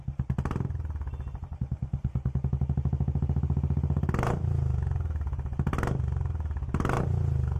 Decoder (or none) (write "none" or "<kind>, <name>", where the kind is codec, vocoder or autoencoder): none